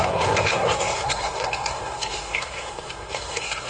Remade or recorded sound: remade